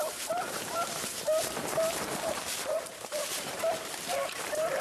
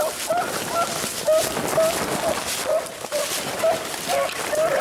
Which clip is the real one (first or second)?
second